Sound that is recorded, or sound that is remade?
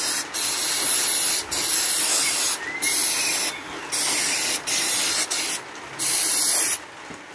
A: recorded